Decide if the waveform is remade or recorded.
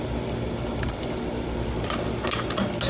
recorded